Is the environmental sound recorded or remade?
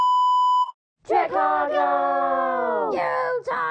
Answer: recorded